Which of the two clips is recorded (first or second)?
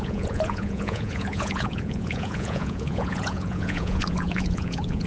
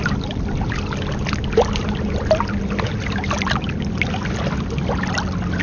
second